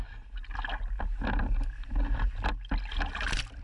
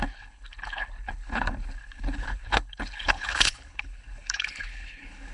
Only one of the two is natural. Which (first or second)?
first